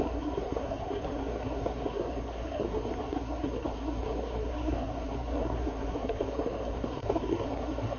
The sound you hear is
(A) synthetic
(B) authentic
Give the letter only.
A